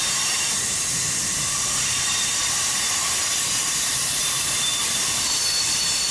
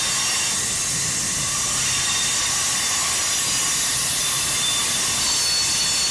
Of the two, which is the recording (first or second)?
second